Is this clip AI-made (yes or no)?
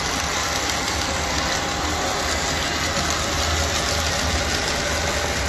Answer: no